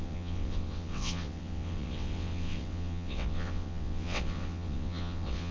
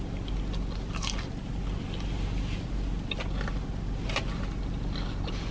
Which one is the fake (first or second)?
first